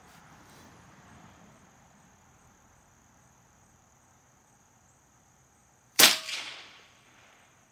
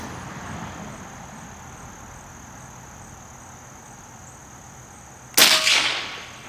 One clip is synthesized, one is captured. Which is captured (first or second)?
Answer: second